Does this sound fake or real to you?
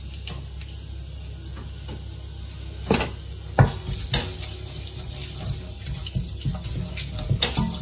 real